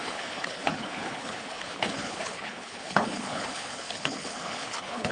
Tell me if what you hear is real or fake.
fake